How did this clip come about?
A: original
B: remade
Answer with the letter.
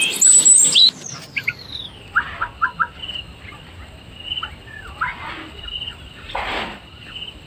A